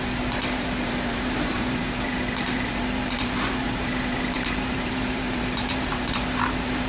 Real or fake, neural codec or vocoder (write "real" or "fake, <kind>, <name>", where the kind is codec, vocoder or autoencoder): fake, vocoder, BigVGAN v2